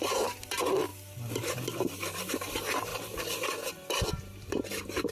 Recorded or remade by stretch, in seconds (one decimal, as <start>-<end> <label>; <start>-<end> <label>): 0.0-0.9 remade; 0.9-2.3 recorded; 2.3-2.9 remade; 2.9-4.1 recorded; 4.1-5.1 remade